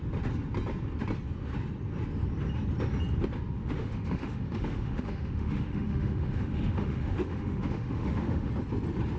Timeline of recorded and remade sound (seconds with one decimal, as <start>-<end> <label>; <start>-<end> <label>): 0.0-3.6 recorded; 3.6-8.5 remade; 8.5-9.2 recorded